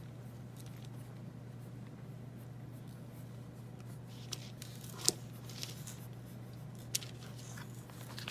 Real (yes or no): yes